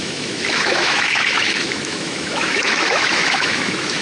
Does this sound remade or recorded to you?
remade